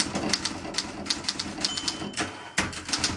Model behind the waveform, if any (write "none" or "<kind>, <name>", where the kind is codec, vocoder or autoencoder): none